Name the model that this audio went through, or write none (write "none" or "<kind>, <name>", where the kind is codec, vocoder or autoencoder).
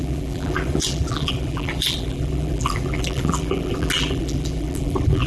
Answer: vocoder, BigVGAN v2